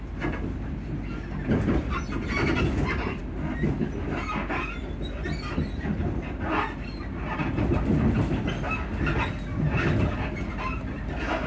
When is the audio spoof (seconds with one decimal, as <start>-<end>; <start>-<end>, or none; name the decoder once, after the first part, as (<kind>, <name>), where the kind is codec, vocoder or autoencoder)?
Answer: none